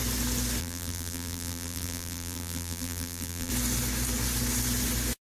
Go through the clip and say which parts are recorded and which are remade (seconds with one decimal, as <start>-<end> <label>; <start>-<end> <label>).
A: 0.0-0.6 recorded; 0.6-3.5 remade; 3.5-5.3 recorded